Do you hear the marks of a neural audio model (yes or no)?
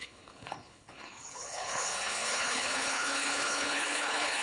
yes